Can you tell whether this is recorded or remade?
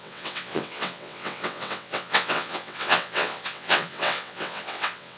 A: remade